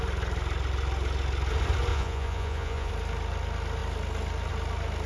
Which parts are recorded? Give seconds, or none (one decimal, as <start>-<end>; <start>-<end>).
0.0-1.9; 2.9-5.1